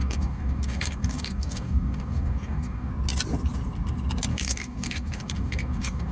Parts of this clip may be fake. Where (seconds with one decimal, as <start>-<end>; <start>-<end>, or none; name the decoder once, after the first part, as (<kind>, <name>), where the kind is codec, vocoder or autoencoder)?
0.0-2.9 (codec, DAC); 4.3-6.1